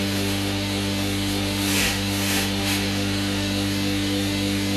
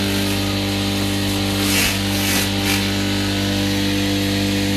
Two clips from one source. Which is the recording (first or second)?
second